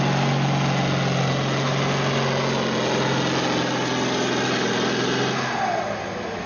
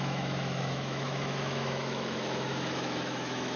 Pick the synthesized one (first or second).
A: second